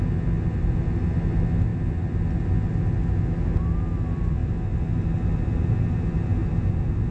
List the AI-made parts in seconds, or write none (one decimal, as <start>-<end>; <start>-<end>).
none